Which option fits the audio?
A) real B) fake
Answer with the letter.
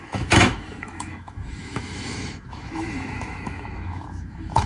B